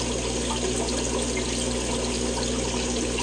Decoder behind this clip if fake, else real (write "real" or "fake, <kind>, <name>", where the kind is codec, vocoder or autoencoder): real